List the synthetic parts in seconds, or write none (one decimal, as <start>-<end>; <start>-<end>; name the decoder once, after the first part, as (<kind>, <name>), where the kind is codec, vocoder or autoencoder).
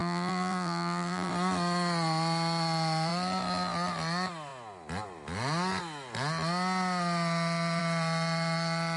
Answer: 0.0-1.3 (vocoder, BigVGAN v2)